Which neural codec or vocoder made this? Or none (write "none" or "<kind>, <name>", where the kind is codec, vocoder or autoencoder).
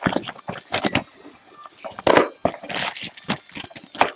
none